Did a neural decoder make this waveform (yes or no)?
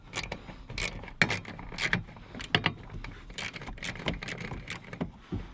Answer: no